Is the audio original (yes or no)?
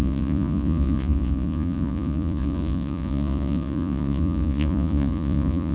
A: no